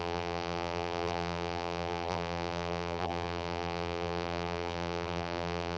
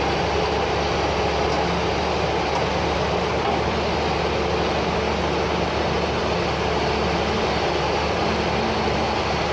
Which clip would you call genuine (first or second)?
second